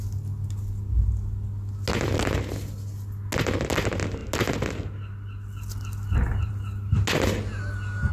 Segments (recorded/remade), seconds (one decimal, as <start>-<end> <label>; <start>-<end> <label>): 0.0-8.1 recorded

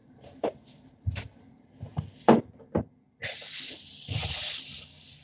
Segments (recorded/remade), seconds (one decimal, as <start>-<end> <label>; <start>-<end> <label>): 0.0-1.4 remade; 1.4-5.2 recorded

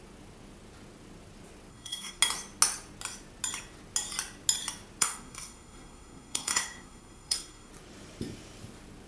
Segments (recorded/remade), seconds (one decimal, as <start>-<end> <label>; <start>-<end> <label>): 0.0-1.7 recorded; 1.7-2.2 remade; 2.2-5.0 recorded; 5.0-7.7 remade; 7.7-9.1 recorded

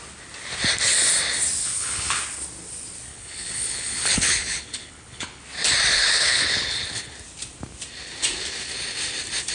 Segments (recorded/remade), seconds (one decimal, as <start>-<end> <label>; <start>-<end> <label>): 0.0-1.6 recorded; 1.6-2.2 remade; 2.2-3.1 recorded; 3.1-5.4 remade; 5.4-5.9 recorded; 5.9-7.1 remade; 7.1-9.5 recorded

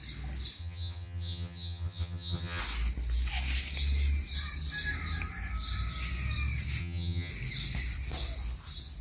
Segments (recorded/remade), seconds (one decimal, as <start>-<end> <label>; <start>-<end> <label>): 0.0-0.6 recorded; 0.6-2.6 remade; 2.6-6.8 recorded; 6.8-7.3 remade; 7.3-9.0 recorded